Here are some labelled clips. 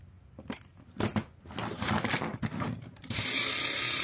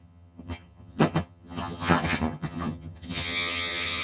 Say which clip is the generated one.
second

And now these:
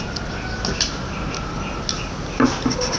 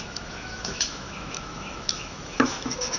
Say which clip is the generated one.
second